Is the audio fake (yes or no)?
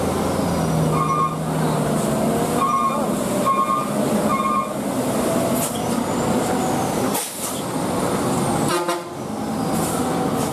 no